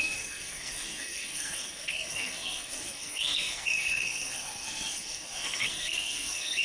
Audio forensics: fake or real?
fake